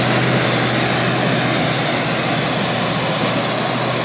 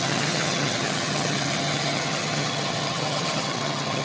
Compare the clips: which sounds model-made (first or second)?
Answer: second